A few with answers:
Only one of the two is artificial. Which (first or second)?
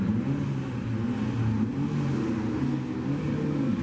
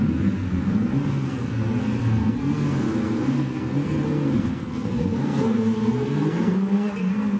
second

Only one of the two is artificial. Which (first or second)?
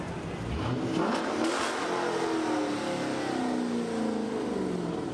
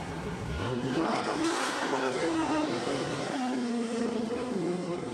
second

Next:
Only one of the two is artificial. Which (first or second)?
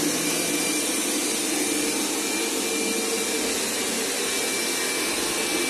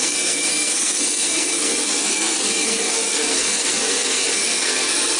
second